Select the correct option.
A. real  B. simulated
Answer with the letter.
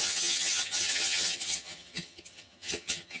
B